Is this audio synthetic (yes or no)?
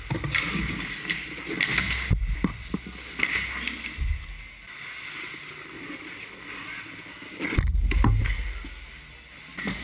no